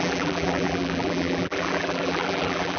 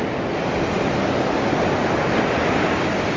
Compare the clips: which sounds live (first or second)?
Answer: second